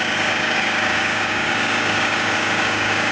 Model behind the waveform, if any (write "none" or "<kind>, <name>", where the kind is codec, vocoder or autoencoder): codec, DAC